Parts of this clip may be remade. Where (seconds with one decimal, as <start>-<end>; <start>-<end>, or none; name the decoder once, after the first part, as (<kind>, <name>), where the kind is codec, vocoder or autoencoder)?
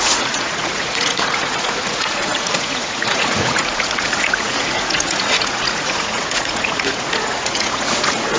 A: 0.0-8.4 (vocoder, Vocos)